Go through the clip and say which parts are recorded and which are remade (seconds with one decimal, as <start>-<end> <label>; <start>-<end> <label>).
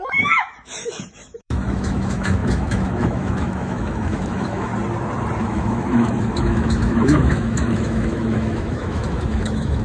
0.0-4.7 remade; 4.7-5.4 recorded; 5.4-9.8 remade